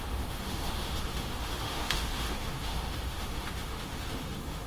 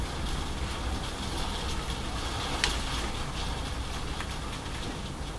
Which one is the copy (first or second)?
first